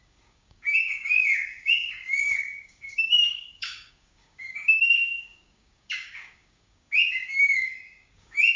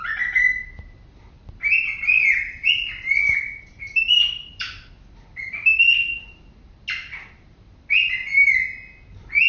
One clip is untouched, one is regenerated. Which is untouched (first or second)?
second